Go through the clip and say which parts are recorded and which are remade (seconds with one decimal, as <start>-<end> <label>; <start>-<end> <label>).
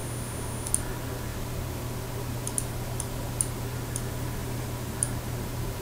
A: 0.0-0.7 remade; 0.7-5.8 recorded